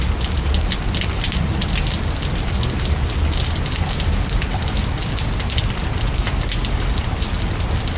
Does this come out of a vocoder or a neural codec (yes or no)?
no